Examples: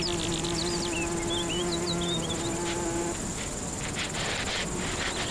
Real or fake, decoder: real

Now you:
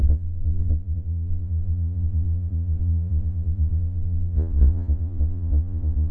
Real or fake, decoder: fake, vocoder, Vocos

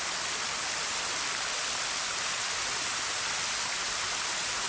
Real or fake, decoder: real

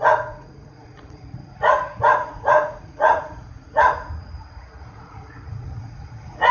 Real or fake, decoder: fake, vocoder, Vocos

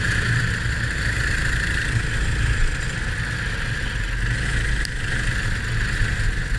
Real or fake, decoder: real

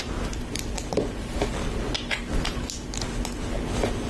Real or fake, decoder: real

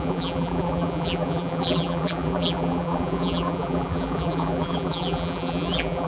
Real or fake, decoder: fake, vocoder, BigVGAN v2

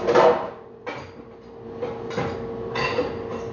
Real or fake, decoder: real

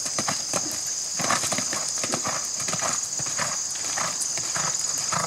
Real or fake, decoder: real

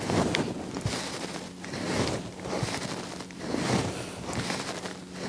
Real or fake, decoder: real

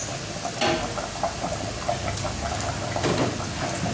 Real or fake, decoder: real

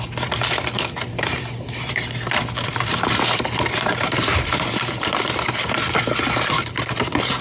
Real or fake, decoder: real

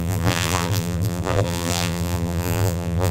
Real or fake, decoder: fake, vocoder, BigVGAN v2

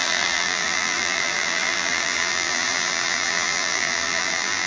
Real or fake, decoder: fake, vocoder, BigVGAN v2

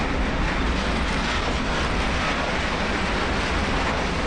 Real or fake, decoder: real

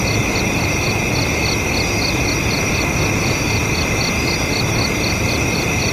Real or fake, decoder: real